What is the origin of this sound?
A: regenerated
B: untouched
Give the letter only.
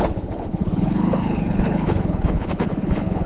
A